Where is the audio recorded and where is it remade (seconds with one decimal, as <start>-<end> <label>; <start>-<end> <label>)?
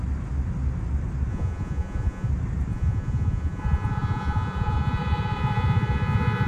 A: 0.0-1.3 recorded; 1.3-2.3 remade; 2.3-2.7 recorded; 2.7-6.5 remade